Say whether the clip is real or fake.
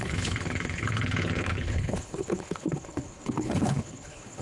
fake